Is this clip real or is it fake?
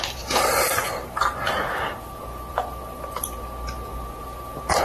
fake